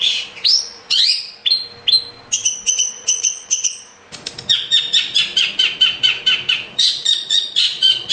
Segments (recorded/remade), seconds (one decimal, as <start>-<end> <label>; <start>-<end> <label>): 0.0-1.4 remade; 1.4-2.7 recorded; 2.7-3.9 remade; 3.9-6.5 recorded; 6.5-8.1 remade